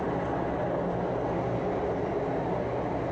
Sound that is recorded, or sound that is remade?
recorded